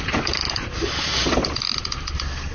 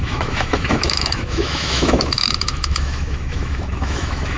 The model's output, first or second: second